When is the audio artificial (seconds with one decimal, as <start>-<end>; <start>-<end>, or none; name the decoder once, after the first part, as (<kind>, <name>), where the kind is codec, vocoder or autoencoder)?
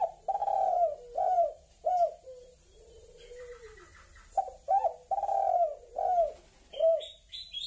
0.0-3.9 (vocoder, BigVGAN v2); 6.7-7.7